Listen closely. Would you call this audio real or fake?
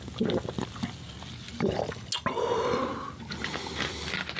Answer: real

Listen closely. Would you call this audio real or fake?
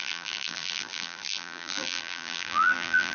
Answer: fake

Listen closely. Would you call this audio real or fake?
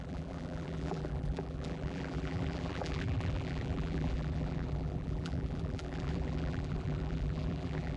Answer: fake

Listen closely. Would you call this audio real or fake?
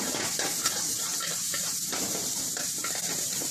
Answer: fake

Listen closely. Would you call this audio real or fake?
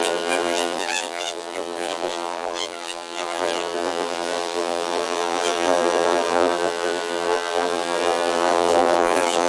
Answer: fake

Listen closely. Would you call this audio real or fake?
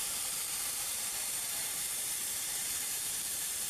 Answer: fake